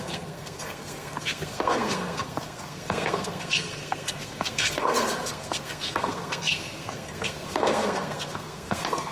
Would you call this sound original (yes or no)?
no